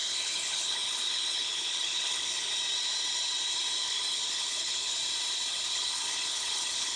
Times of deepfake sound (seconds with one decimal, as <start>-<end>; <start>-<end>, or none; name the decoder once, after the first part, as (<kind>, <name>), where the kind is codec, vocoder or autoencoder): 0.0-2.5 (codec, HILCodec); 3.8-5.0; 5.5-7.0